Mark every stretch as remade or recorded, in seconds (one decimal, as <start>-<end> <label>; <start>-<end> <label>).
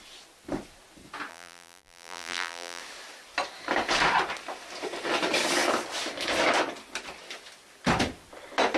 0.0-1.3 recorded; 1.3-2.8 remade; 2.8-8.8 recorded